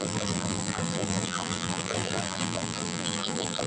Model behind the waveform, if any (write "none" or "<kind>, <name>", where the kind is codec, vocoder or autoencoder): vocoder, BigVGAN v2